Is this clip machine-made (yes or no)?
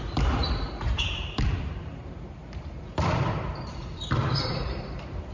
yes